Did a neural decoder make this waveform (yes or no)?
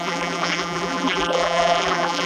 yes